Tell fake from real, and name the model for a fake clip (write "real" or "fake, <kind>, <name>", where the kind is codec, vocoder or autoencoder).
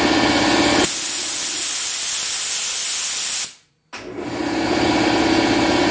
real